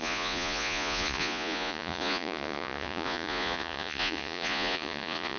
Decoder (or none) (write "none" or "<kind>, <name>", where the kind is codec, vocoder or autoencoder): vocoder, Vocos